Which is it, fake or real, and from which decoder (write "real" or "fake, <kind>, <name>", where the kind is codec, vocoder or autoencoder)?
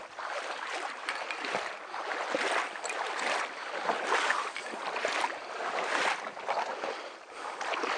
real